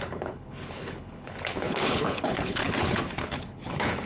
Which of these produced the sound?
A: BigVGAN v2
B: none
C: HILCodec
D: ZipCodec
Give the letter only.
C